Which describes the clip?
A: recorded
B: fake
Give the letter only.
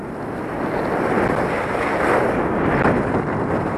A